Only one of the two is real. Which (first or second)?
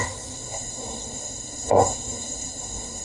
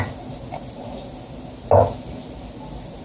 second